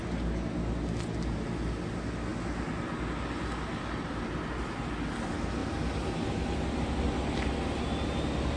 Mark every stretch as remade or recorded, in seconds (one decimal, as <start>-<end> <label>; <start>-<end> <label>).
0.0-8.6 recorded